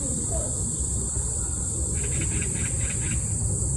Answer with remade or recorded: remade